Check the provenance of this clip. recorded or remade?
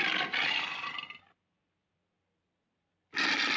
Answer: recorded